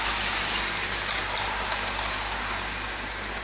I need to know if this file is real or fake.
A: fake